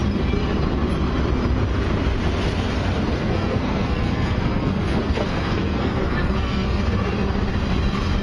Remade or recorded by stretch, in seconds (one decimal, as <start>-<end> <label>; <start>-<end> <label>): 0.0-3.1 recorded; 3.1-6.8 remade; 6.8-8.2 recorded